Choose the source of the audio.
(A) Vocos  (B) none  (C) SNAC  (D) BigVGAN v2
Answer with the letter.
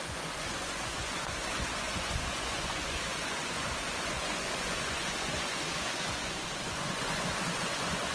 A